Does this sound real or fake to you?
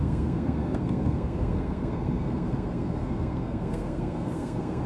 fake